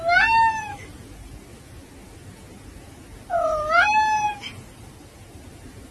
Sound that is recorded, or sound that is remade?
recorded